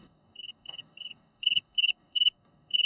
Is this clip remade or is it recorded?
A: remade